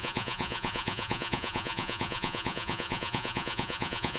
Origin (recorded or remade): remade